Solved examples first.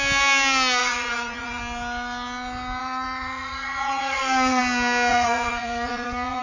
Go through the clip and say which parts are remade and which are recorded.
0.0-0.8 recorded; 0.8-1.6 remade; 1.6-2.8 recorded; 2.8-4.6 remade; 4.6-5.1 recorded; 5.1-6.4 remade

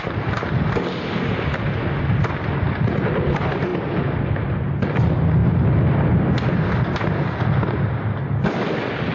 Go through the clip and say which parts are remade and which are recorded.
0.0-9.1 recorded

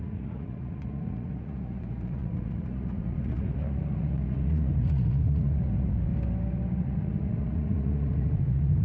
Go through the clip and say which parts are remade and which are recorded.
0.0-6.1 remade; 6.1-6.8 recorded; 6.8-8.8 remade

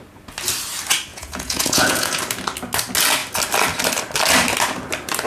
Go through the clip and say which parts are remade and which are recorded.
0.0-1.1 recorded; 1.1-2.2 remade; 2.2-5.3 recorded

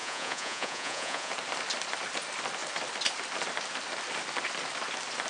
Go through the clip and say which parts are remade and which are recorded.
0.0-1.3 remade; 1.3-5.3 recorded

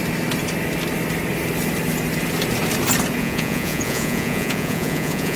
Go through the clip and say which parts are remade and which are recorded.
0.0-3.2 recorded; 3.2-5.4 remade

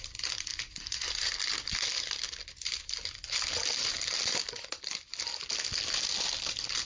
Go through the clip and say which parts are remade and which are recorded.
0.0-6.8 recorded

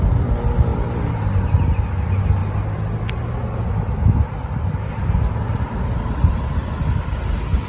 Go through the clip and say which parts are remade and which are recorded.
0.0-7.7 recorded